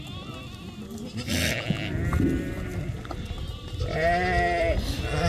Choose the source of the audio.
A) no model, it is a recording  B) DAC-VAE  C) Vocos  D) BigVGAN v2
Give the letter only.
A